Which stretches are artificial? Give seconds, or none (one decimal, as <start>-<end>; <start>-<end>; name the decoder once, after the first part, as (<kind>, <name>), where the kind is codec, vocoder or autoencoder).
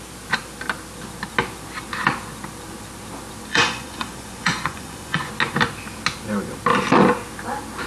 3.5-5.3 (vocoder, Vocos)